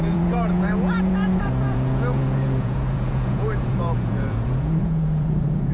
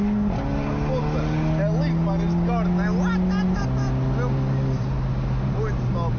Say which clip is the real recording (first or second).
second